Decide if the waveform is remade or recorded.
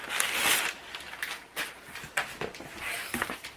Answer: recorded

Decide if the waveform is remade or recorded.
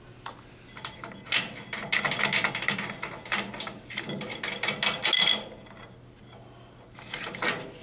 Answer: recorded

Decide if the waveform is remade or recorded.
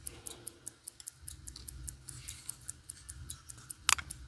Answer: recorded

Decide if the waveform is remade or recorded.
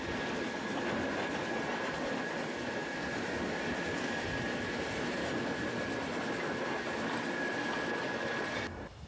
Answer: recorded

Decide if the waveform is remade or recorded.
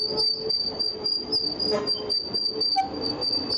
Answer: recorded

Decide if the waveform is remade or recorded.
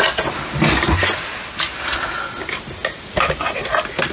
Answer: recorded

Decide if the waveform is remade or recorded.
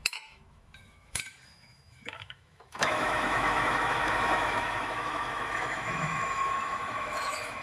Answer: remade